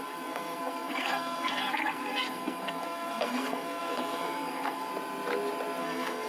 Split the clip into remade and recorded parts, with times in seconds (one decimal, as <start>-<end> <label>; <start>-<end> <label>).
0.0-4.9 remade; 4.9-5.8 recorded; 5.8-6.3 remade